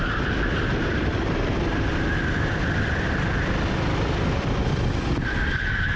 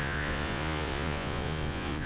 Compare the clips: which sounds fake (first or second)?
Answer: second